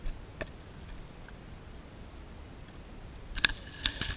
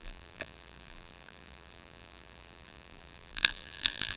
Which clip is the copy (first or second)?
second